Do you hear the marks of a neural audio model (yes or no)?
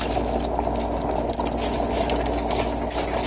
no